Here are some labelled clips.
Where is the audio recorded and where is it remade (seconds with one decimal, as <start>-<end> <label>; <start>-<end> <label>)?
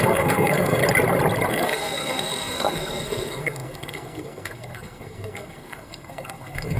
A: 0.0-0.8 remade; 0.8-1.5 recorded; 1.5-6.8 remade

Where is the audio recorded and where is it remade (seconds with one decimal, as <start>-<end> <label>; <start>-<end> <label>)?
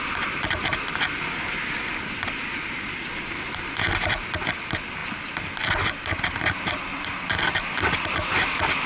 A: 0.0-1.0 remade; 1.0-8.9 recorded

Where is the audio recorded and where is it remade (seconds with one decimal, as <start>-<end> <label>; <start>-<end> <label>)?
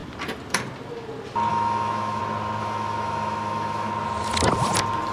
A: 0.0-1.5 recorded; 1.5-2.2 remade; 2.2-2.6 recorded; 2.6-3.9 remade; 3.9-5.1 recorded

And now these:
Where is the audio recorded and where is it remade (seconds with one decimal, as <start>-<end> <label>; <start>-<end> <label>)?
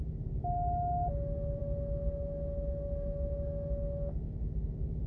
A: 0.0-5.1 recorded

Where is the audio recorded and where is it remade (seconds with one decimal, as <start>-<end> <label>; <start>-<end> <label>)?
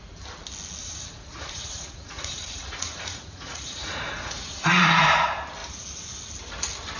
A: 0.0-0.8 recorded; 0.8-5.0 remade; 5.0-7.0 recorded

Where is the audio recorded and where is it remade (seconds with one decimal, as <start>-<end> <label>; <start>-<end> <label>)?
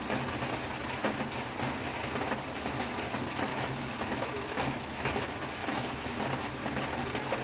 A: 0.0-3.5 recorded; 3.5-5.1 remade; 5.1-5.6 recorded; 5.6-6.2 remade; 6.2-7.4 recorded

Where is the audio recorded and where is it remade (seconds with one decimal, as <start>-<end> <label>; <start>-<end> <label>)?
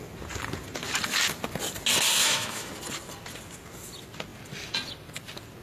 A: 0.0-2.2 recorded; 2.2-2.7 remade; 2.7-5.6 recorded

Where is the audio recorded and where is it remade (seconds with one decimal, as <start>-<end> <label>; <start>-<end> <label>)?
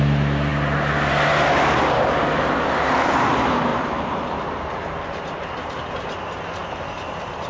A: 0.0-3.7 recorded; 3.7-6.0 remade; 6.0-7.5 recorded